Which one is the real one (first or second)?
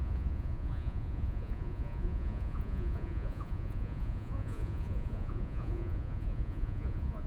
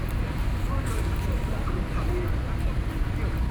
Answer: second